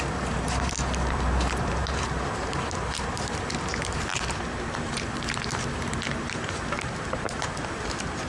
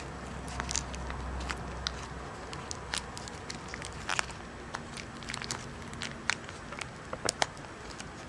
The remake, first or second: first